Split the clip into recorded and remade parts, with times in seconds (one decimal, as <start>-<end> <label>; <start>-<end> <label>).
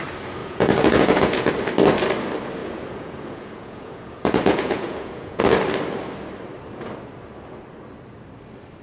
0.0-0.4 recorded; 0.4-1.5 remade; 1.5-2.6 recorded; 2.6-5.4 remade; 5.4-8.8 recorded